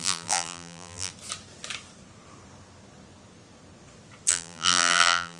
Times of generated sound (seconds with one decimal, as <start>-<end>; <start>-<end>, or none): 0.0-1.1; 4.3-5.4